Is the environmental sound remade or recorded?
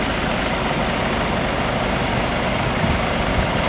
recorded